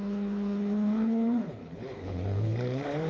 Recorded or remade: remade